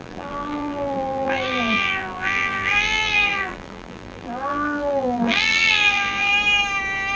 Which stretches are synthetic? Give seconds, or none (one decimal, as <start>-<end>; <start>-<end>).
0.0-6.3